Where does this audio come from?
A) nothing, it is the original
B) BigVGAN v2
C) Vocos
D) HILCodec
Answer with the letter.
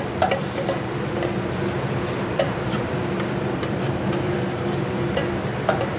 B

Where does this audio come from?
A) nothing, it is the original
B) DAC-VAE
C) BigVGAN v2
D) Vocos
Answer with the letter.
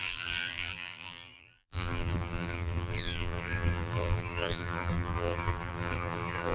C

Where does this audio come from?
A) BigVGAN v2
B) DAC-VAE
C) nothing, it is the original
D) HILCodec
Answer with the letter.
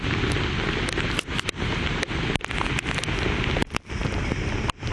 C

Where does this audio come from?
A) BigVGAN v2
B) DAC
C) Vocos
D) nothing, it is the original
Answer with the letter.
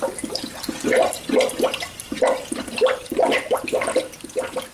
D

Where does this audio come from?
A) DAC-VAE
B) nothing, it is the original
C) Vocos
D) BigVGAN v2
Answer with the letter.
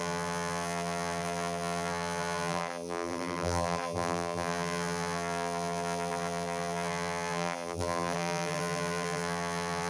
D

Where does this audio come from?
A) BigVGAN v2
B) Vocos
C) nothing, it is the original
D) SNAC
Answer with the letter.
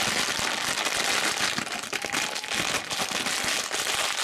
C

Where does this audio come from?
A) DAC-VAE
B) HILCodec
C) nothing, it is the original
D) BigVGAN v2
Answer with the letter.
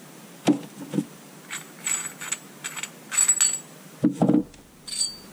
C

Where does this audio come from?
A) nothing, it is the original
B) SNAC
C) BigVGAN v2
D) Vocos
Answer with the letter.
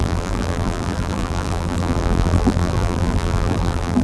C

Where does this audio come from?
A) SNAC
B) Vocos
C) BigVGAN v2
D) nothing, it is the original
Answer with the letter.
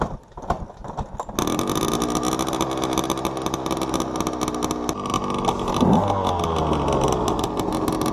D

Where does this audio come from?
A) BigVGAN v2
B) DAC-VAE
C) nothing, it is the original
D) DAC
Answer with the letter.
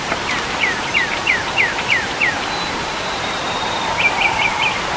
A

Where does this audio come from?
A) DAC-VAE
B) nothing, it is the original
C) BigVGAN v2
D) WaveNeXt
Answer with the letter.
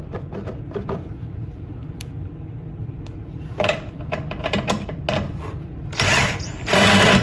C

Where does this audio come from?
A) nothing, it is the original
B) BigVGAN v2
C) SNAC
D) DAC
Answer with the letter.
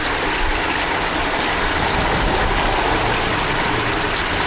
A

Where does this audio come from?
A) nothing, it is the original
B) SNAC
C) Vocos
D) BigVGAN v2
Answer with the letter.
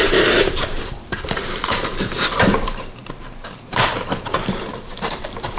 D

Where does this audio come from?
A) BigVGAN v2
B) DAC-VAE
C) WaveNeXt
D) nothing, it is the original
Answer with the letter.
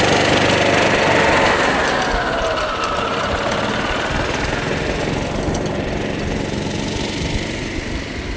D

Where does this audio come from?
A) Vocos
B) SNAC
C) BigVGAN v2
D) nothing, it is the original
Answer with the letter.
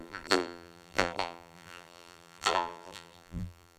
C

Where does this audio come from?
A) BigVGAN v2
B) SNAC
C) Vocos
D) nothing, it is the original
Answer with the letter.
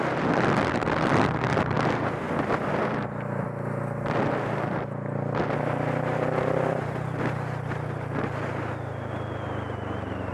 D